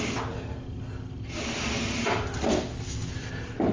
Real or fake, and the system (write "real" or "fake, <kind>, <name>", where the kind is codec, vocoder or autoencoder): real